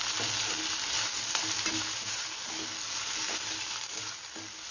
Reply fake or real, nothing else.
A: real